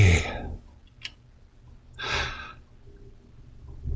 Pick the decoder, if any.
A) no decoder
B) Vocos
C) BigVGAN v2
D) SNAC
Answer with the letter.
A